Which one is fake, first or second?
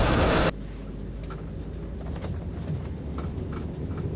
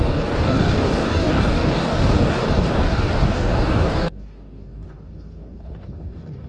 second